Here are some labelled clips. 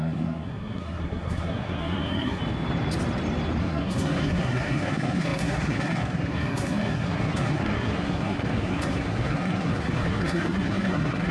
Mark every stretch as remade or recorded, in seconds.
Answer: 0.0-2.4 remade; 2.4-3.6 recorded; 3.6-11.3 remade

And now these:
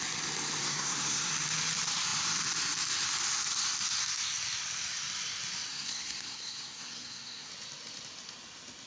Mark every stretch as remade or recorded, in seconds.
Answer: 0.0-0.6 recorded; 0.6-1.3 remade; 1.3-5.7 recorded; 5.7-7.5 remade; 7.5-8.9 recorded